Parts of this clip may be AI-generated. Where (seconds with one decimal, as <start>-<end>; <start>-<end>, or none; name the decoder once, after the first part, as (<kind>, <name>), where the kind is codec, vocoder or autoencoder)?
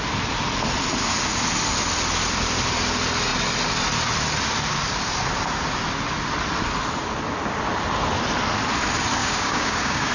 9.2-10.1 (codec, DAC)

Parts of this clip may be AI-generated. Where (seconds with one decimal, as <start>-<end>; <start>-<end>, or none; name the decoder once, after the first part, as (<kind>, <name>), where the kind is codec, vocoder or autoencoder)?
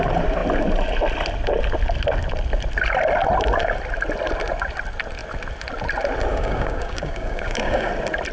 6.3-7.9 (codec, DAC)